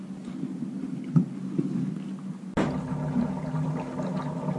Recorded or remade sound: recorded